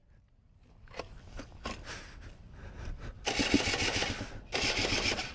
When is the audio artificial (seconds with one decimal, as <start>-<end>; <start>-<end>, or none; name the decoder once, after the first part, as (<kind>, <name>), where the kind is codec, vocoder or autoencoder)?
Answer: 1.2-1.7 (codec, DAC); 4.6-5.3